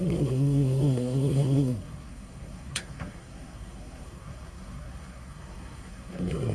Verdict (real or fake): fake